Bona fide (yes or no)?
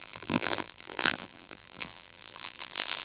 no